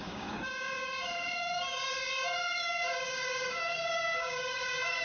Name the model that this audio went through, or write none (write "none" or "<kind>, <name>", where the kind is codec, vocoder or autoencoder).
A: codec, DAC